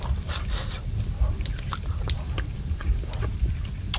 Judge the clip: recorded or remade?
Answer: recorded